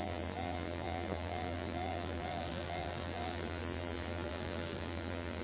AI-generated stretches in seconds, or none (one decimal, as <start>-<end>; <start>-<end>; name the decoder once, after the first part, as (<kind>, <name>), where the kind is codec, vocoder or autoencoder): 0.0-5.4 (vocoder, BigVGAN v2)